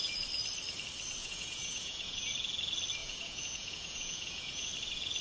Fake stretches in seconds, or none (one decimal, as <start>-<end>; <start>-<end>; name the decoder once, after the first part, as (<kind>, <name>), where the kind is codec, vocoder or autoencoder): 1.2-2.3 (vocoder, Vocos); 3.0-4.7